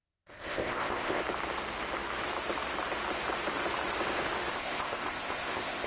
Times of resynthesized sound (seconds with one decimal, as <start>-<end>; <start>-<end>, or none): 0.0-1.2; 4.5-5.9